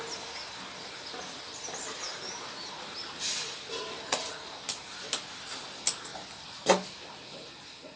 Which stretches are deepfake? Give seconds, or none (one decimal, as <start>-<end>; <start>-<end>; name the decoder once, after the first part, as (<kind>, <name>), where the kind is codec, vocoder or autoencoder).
none